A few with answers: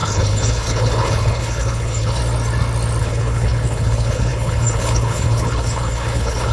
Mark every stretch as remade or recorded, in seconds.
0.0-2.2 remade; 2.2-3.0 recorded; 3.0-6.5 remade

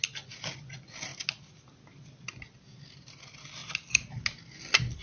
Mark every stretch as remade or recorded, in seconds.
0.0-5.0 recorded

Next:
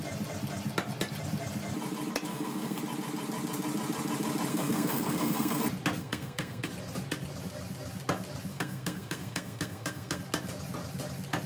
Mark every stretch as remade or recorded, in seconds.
0.0-2.3 recorded; 2.3-2.8 remade; 2.8-4.5 recorded; 4.5-5.6 remade; 5.6-6.0 recorded; 6.0-6.7 remade; 6.7-8.5 recorded; 8.5-10.2 remade; 10.2-11.5 recorded

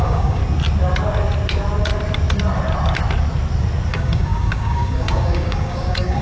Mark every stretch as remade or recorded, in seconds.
0.0-0.4 remade; 0.4-3.9 recorded; 3.9-6.2 remade

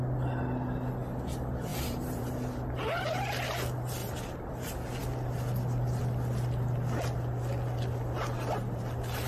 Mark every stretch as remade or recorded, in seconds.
0.0-1.7 recorded; 1.7-2.3 remade; 2.3-4.0 recorded; 4.0-4.5 remade; 4.5-9.3 recorded

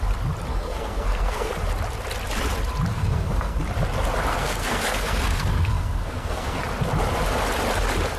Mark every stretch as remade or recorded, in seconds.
0.0-0.5 recorded; 0.5-1.5 remade; 1.5-2.9 recorded; 2.9-3.6 remade; 3.6-4.3 recorded; 4.3-6.6 remade; 6.6-8.2 recorded